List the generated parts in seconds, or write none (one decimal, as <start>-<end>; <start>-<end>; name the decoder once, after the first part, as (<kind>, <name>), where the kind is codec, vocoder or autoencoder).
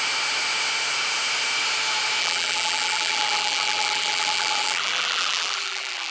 2.2-6.1 (vocoder, BigVGAN v2)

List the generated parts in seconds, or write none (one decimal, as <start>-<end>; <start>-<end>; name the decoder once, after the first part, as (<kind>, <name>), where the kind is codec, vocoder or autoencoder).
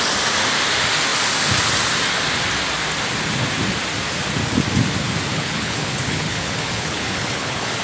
5.3-7.8 (codec, HILCodec)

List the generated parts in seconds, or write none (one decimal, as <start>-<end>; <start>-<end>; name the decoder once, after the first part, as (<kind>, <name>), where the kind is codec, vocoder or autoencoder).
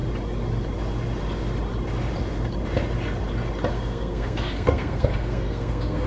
3.7-6.1 (codec, SNAC)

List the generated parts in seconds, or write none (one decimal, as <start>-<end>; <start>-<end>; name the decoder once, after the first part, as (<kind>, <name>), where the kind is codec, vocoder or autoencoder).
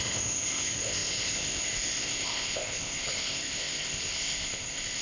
0.0-5.0 (codec, ZipCodec)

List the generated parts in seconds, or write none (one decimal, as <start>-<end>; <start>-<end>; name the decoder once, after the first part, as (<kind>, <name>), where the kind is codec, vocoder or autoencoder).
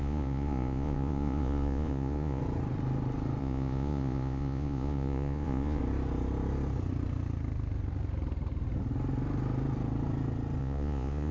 0.0-2.4 (vocoder, Vocos); 3.4-5.8; 10.6-11.3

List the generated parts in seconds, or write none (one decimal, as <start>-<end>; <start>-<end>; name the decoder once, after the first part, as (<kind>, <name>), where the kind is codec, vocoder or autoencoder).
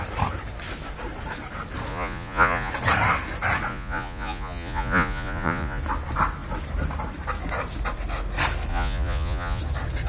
1.9-2.7 (vocoder, Vocos); 3.7-5.8; 8.7-9.6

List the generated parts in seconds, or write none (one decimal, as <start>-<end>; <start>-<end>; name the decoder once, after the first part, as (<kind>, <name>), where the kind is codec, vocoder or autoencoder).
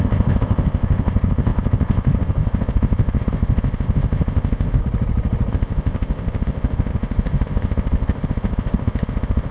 0.0-4.8 (codec, ZipCodec); 5.5-9.5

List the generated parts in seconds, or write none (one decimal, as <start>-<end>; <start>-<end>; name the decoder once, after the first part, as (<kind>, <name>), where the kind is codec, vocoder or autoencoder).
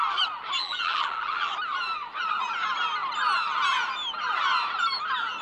0.6-1.5 (vocoder, BigVGAN v2)